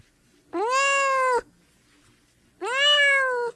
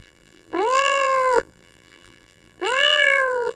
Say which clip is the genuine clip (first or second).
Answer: first